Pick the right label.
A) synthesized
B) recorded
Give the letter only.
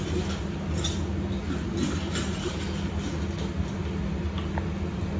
B